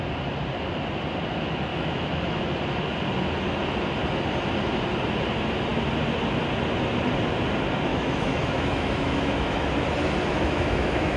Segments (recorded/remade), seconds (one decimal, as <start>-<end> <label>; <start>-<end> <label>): 0.0-1.7 recorded; 1.7-2.4 remade; 2.4-7.9 recorded; 7.9-9.7 remade; 9.7-10.3 recorded; 10.3-11.2 remade

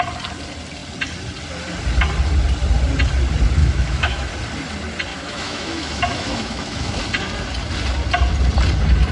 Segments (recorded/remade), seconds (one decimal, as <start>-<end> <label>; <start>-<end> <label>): 0.0-3.6 recorded; 3.6-4.3 remade; 4.3-5.1 recorded; 5.1-7.0 remade; 7.0-9.1 recorded

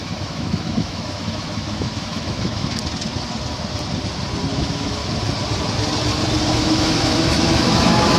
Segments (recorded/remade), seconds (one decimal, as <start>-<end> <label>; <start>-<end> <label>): 0.0-2.8 remade; 2.8-4.6 recorded; 4.6-5.0 remade; 5.0-6.5 recorded; 6.5-8.2 remade

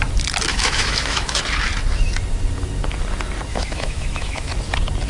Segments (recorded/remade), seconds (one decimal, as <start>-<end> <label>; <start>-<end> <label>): 0.0-0.5 recorded; 0.5-1.4 remade; 1.4-3.5 recorded; 3.5-4.5 remade; 4.5-5.1 recorded

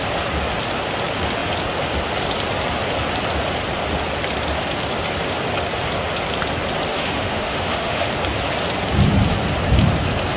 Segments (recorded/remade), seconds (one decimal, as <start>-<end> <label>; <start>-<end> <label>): 0.0-6.9 recorded; 6.9-8.1 remade; 8.1-10.4 recorded

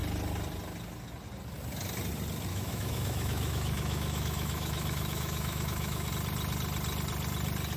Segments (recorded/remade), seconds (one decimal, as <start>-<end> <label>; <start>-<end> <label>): 0.0-2.5 recorded; 2.5-6.1 remade; 6.1-7.8 recorded

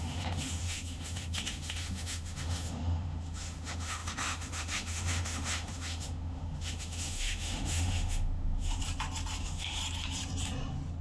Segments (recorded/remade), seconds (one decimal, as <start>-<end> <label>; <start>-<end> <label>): 0.0-8.8 remade; 8.8-9.4 recorded; 9.4-9.8 remade; 9.8-11.0 recorded

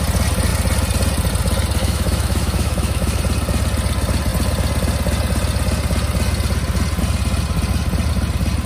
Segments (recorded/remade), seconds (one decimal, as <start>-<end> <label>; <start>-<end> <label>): 0.0-1.8 recorded; 1.8-3.2 remade; 3.2-8.7 recorded